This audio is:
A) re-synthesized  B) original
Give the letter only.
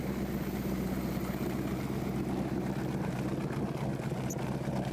B